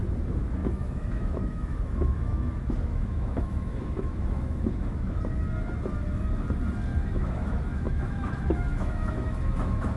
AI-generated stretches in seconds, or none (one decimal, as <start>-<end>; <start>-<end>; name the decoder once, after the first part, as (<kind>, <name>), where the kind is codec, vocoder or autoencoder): 0.6-5.2 (autoencoder, DAC-VAE); 6.9-10.0